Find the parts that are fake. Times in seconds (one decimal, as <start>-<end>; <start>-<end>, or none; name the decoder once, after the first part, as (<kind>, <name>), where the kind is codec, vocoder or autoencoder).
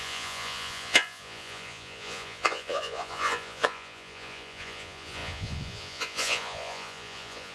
0.0-7.5 (vocoder, Vocos)